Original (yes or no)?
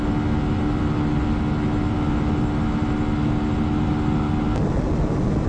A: yes